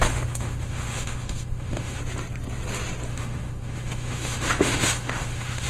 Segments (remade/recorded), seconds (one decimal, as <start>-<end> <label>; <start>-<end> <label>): 0.0-2.0 remade; 2.0-3.1 recorded; 3.1-5.7 remade